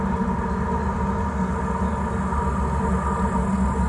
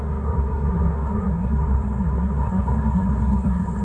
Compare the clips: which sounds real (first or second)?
first